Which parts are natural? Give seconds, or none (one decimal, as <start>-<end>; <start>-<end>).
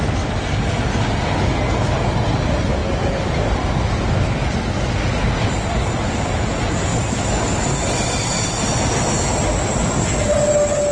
0.0-10.9